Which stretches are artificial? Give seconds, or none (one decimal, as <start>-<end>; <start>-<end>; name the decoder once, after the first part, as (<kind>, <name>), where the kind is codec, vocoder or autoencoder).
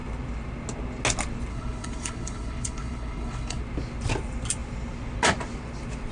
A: 1.5-3.6 (codec, HILCodec)